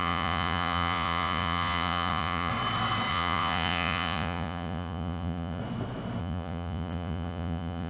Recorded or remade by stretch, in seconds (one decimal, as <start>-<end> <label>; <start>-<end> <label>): 0.0-2.5 remade; 2.5-3.1 recorded; 3.1-5.6 remade; 5.6-6.2 recorded; 6.2-7.9 remade